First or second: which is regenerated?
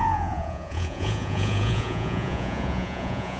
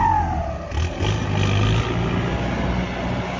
first